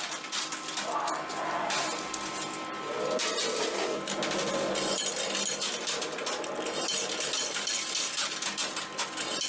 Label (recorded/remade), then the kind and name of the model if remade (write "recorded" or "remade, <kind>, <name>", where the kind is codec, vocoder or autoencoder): recorded